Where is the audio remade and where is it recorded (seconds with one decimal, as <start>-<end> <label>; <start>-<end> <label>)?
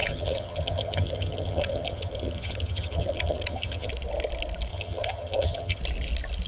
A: 0.0-3.9 remade; 3.9-4.7 recorded; 4.7-5.8 remade; 5.8-6.5 recorded